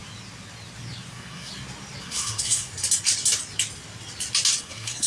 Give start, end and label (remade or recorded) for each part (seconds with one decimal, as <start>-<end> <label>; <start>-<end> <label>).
0.0-1.1 recorded; 1.1-1.5 remade; 1.5-2.0 recorded; 2.0-2.7 remade; 2.7-4.6 recorded; 4.6-5.1 remade